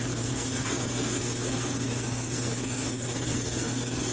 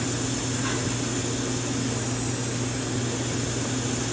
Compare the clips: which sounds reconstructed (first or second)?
first